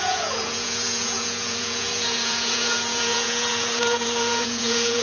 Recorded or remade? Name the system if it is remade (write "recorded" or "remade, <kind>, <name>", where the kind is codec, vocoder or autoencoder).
remade, vocoder, Vocos